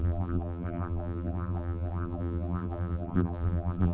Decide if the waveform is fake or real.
fake